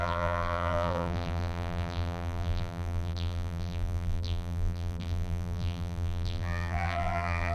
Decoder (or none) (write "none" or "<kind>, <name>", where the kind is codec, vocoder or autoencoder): vocoder, BigVGAN v2